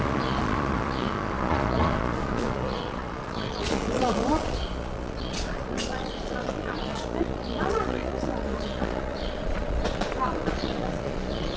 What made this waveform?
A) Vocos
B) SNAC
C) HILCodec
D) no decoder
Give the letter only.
A